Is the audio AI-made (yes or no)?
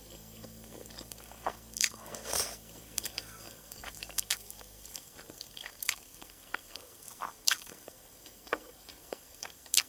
yes